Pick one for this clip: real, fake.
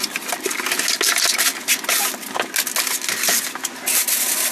real